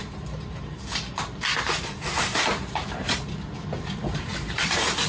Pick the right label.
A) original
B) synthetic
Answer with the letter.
B